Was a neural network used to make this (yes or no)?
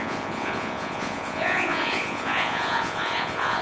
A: yes